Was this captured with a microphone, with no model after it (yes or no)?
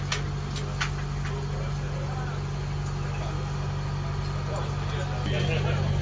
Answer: yes